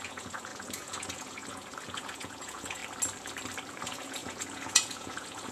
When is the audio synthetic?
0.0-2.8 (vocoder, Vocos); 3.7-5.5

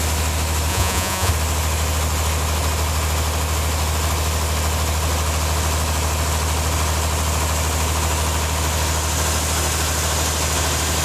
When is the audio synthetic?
0.7-1.3 (vocoder, Vocos)

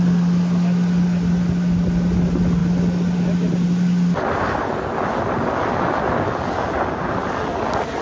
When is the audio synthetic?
none

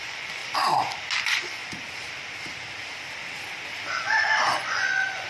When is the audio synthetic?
0.0-0.4 (vocoder, Vocos); 1.2-1.6; 4.0-5.3

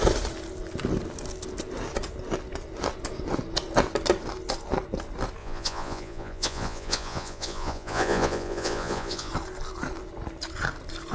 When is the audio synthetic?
5.4-9.3 (vocoder, Vocos)

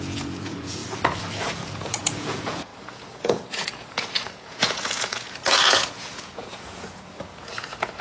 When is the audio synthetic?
0.0-0.8 (vocoder, Vocos); 1.4-8.0

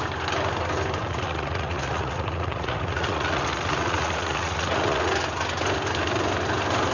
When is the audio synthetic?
1.0-5.1 (vocoder, Vocos)

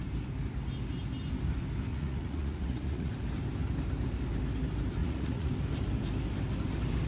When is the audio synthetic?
1.9-3.1 (vocoder, Vocos); 5.0-5.5